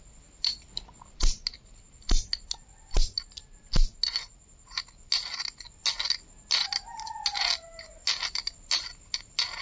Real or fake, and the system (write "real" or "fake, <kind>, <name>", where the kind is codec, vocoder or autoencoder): real